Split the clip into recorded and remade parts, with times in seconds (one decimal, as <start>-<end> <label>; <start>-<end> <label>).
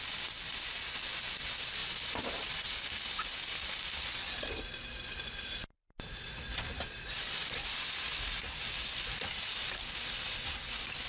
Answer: 0.0-11.1 recorded